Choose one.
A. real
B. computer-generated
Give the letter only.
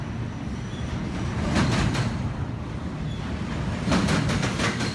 A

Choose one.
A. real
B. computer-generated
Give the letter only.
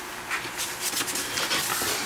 A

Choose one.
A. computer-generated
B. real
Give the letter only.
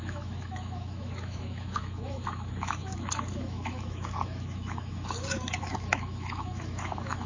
A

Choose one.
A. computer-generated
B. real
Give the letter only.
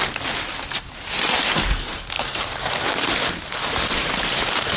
B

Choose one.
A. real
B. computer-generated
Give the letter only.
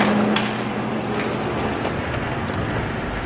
A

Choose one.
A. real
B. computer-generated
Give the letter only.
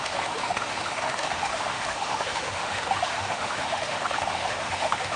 B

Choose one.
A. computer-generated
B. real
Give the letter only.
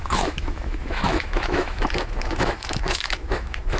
A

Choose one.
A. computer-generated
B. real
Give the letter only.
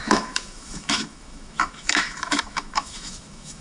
A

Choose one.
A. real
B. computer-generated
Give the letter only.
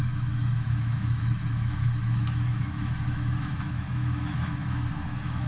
B